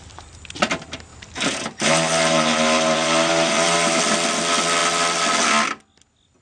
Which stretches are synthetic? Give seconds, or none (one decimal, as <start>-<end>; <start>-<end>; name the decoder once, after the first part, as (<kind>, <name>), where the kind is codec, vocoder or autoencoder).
1.1-4.0 (vocoder, BigVGAN v2)